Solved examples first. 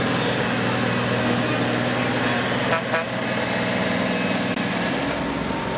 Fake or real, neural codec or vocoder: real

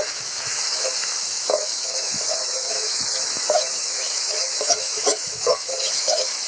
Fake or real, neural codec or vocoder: fake, autoencoder, DAC-VAE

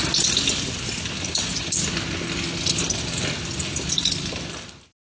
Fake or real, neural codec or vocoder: real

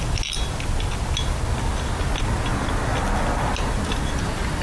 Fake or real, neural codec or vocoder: real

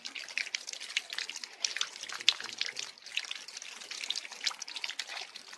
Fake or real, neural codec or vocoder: real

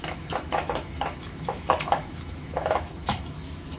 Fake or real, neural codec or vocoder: fake, autoencoder, DAC-VAE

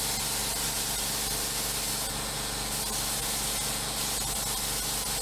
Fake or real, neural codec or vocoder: real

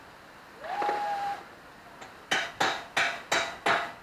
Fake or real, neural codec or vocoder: real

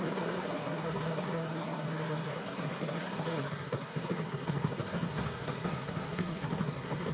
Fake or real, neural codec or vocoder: fake, codec, SNAC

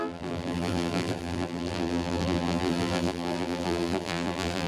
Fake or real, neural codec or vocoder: fake, vocoder, BigVGAN v2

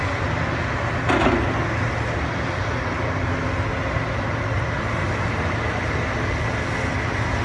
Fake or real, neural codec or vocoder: real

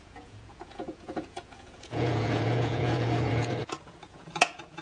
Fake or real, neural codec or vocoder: fake, vocoder, Vocos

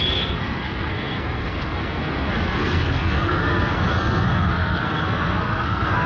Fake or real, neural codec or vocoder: fake, codec, SNAC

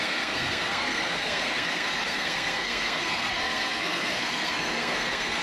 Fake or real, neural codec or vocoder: fake, codec, SNAC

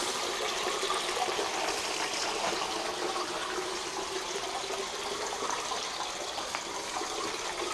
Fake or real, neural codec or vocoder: fake, vocoder, BigVGAN v2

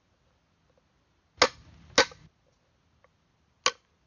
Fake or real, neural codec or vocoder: real